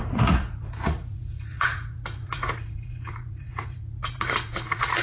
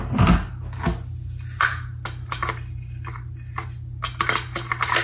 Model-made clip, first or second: first